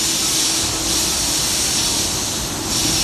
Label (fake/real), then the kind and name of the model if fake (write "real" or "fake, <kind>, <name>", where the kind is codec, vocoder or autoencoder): real